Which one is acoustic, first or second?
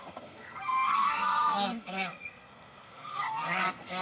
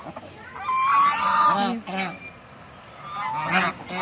second